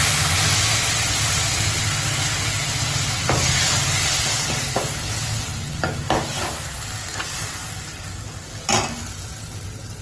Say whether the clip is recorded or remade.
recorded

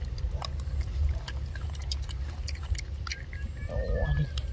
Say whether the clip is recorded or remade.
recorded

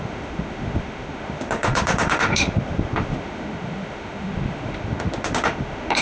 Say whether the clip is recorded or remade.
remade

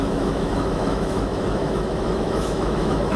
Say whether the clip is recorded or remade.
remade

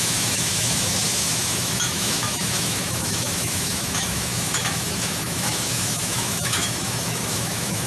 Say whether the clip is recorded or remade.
remade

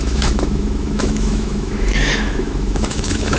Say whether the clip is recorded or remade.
remade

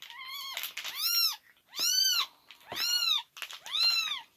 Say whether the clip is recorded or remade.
recorded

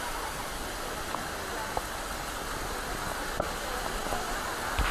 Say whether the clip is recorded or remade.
recorded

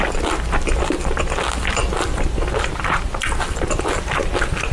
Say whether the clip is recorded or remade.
recorded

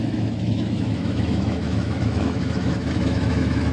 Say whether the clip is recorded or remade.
remade